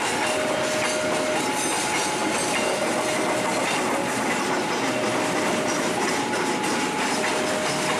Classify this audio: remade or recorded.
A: recorded